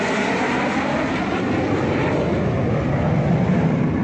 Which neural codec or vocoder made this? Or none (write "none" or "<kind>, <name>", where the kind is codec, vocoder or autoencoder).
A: none